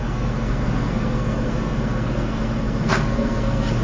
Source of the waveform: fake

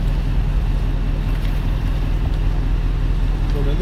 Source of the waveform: real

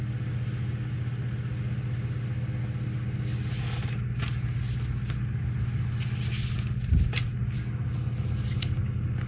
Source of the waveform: real